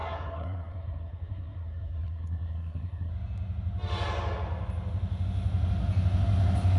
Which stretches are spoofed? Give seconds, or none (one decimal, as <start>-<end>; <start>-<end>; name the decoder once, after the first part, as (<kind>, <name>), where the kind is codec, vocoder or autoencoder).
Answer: 0.0-3.1 (codec, SNAC)